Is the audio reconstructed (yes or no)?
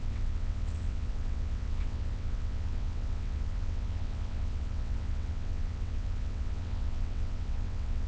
yes